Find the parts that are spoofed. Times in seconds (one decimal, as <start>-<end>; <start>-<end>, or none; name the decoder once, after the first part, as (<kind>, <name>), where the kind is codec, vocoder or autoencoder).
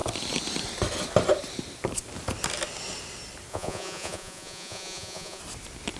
3.5-5.4 (vocoder, Vocos)